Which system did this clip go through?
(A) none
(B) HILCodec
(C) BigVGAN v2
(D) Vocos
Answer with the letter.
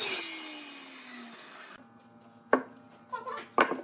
A